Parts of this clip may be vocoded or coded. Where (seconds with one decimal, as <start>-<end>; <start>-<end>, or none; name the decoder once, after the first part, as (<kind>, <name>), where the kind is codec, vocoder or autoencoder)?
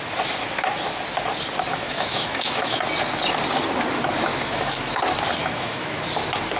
1.7-2.8 (autoencoder, DAC-VAE); 4.3-4.9; 5.4-6.0